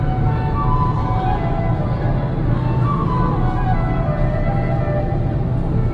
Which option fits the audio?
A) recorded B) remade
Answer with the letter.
A